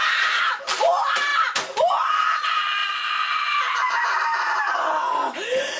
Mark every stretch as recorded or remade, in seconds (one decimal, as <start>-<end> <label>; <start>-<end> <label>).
0.0-5.8 recorded